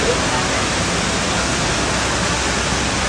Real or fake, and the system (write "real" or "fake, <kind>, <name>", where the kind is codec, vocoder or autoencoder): real